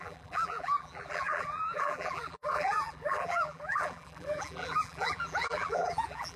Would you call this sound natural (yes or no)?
no